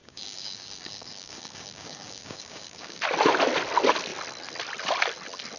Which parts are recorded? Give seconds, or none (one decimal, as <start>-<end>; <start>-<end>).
3.0-5.6